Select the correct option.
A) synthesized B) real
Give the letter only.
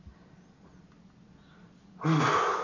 B